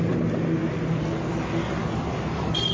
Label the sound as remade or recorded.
recorded